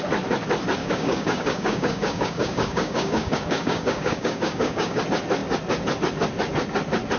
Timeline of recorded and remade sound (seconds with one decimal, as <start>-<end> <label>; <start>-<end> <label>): 0.0-0.8 recorded; 0.8-5.0 remade; 5.0-7.2 recorded